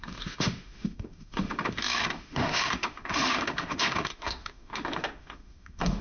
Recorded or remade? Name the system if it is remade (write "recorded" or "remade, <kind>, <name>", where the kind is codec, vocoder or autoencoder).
remade, autoencoder, DAC-VAE